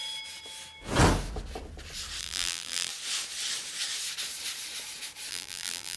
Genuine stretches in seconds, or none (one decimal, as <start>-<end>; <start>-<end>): 0.0-2.2; 2.9-5.3